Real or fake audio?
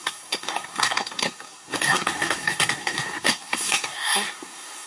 fake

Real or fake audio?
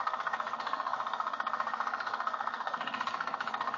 fake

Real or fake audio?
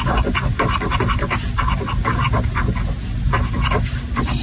real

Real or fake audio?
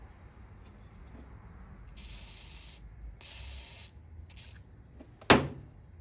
real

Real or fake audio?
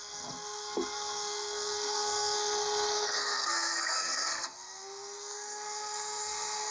fake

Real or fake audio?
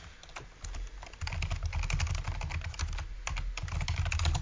real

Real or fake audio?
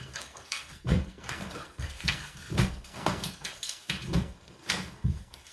fake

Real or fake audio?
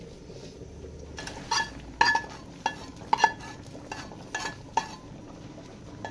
real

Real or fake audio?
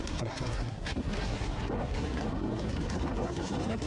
fake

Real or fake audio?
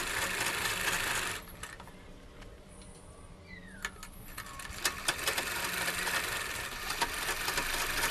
real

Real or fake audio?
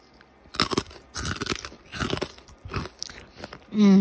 real